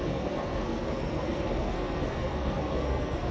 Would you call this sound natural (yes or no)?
no